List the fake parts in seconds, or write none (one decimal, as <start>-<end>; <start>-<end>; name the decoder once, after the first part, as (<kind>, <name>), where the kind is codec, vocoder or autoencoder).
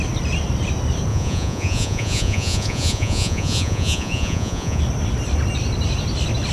1.1-4.8 (vocoder, Vocos)